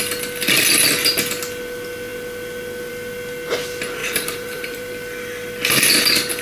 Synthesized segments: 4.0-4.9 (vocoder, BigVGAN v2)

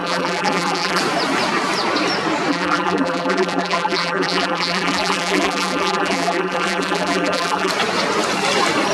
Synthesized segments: 0.0-1.0 (vocoder, BigVGAN v2); 2.5-7.7

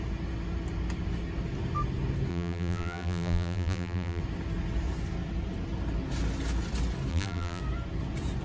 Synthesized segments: 2.3-4.2 (vocoder, BigVGAN v2); 7.1-7.6

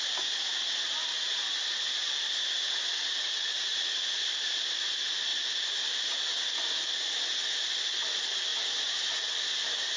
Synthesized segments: 3.7-4.6 (vocoder, BigVGAN v2); 5.3-6.2; 8.5-9.1

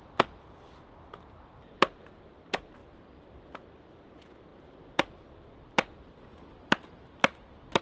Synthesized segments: 2.8-3.9 (vocoder, BigVGAN v2); 4.5-7.8

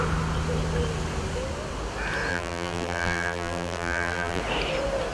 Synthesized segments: 2.3-4.4 (vocoder, BigVGAN v2)

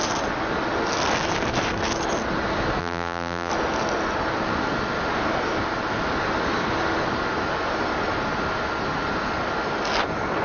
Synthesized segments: 2.8-3.5 (vocoder, BigVGAN v2)